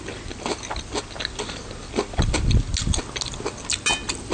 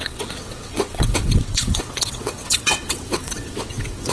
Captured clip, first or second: first